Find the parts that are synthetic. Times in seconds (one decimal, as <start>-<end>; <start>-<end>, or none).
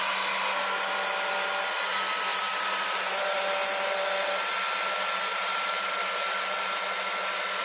2.3-3.5; 5.3-5.9